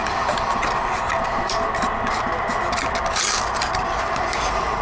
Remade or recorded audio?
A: recorded